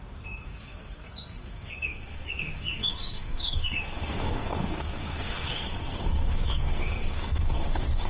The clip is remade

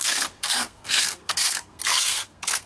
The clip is remade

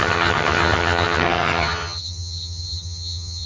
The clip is remade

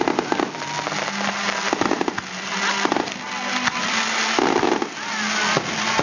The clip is recorded